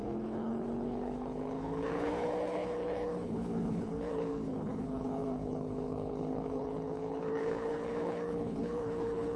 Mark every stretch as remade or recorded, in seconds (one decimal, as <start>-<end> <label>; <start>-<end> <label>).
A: 0.0-9.4 remade